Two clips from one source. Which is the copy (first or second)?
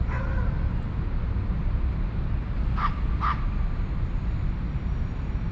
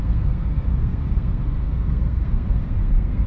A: second